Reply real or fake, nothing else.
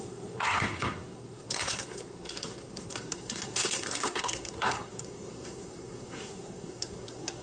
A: fake